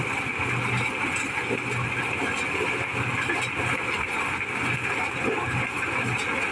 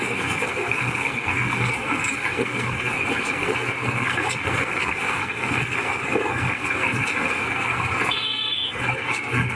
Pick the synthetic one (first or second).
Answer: second